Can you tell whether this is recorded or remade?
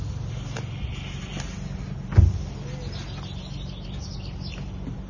recorded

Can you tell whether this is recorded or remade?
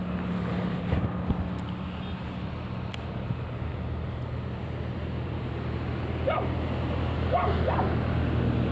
recorded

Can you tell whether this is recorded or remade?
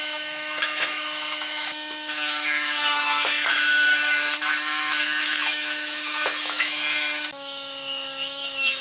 remade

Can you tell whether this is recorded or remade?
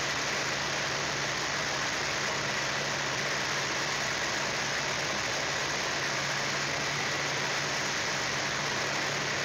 recorded